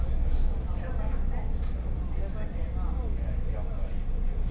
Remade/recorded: recorded